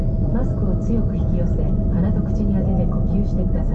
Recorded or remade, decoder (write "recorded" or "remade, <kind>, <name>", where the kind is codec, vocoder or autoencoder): recorded